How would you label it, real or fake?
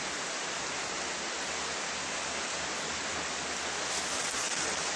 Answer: real